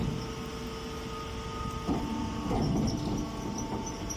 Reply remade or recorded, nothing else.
recorded